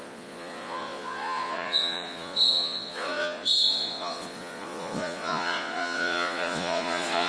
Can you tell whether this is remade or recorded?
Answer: remade